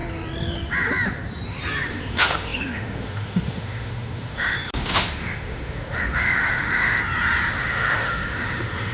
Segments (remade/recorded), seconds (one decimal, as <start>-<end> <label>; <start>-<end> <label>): 0.0-1.9 recorded; 1.9-7.0 remade; 7.0-7.5 recorded; 7.5-8.9 remade

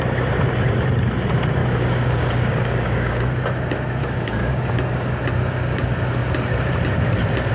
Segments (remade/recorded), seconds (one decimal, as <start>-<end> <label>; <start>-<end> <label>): 0.0-1.6 recorded; 1.6-3.2 remade; 3.2-4.0 recorded; 4.0-5.2 remade; 5.2-7.5 recorded

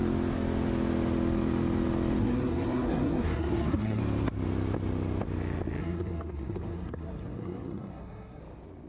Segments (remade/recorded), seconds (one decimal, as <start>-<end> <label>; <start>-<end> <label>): 0.0-2.2 recorded; 2.2-4.0 remade; 4.0-5.8 recorded; 5.8-8.4 remade; 8.4-8.9 recorded

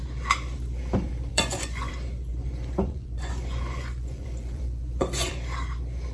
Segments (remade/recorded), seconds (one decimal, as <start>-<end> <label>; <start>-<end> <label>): 0.0-1.3 recorded; 1.3-1.9 remade; 1.9-2.3 recorded; 2.3-5.3 remade; 5.3-6.1 recorded

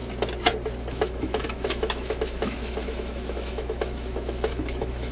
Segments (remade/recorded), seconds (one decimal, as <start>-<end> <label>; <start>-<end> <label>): 0.0-0.9 recorded; 0.9-5.1 remade